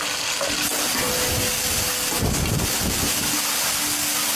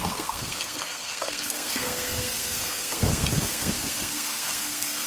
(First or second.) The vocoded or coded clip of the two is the second